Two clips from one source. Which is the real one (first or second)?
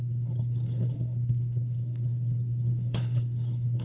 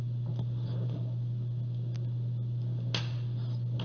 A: second